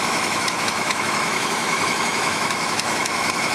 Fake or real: fake